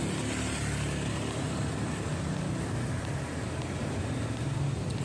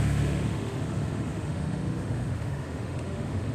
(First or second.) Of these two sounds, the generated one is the second